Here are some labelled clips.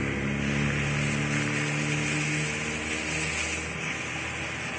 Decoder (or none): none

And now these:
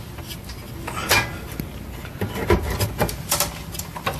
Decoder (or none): none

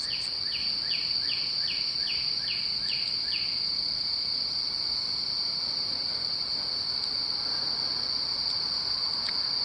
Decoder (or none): none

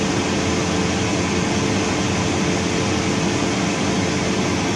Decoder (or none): none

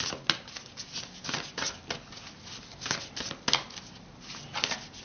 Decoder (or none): none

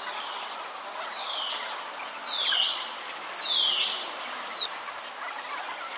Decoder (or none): none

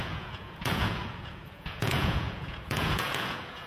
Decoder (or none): vocoder, Vocos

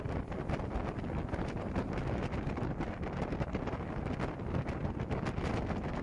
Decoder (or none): none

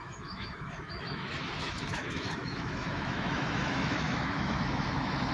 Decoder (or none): autoencoder, DAC-VAE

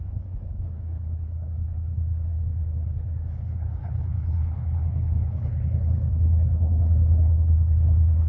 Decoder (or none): codec, HILCodec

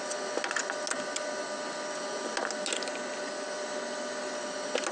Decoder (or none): none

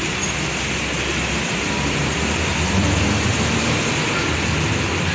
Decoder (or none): vocoder, BigVGAN v2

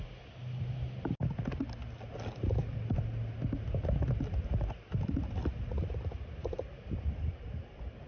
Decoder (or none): none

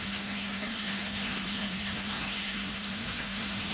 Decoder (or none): codec, SNAC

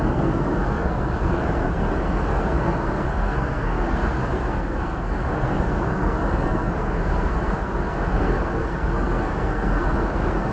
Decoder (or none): codec, SNAC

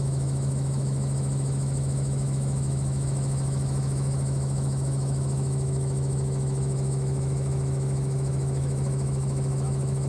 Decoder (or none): autoencoder, DAC-VAE